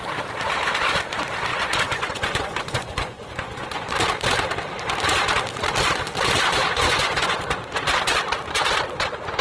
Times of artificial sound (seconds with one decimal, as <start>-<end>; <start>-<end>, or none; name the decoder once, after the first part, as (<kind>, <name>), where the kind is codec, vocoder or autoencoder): 1.5-3.9 (vocoder, Vocos); 6.8-7.6